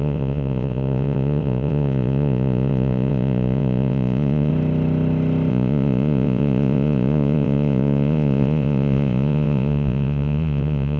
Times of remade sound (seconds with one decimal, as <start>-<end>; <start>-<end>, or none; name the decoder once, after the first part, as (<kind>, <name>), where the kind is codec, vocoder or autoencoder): 0.0-4.5 (vocoder, Vocos); 5.5-11.0

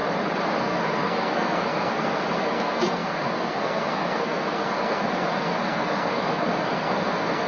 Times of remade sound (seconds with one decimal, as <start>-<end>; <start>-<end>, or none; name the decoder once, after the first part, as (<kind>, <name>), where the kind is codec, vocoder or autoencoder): 0.6-7.5 (codec, SNAC)

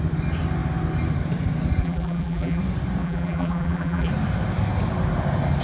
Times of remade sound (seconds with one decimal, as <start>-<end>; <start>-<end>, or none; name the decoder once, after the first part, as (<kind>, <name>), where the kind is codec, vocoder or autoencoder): 1.8-2.6 (vocoder, BigVGAN v2); 3.0-4.1

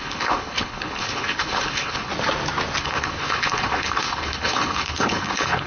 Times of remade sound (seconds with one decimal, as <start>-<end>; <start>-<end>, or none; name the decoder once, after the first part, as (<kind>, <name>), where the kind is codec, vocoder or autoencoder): 0.0-2.1 (codec, HILCodec); 2.8-5.7

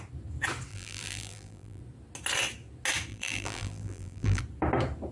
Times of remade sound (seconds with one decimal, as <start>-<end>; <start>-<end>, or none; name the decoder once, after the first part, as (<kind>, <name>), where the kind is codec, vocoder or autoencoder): 0.7-1.8 (vocoder, BigVGAN v2); 3.1-4.4

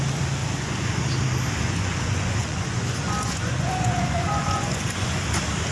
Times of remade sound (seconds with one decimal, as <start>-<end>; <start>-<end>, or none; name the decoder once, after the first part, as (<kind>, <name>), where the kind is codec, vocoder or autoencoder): 0.4-1.0 (vocoder, Vocos); 1.8-5.2

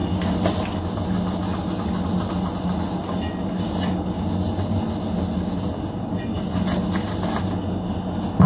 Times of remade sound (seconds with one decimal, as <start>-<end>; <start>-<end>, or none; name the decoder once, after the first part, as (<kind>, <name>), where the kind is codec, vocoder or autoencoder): none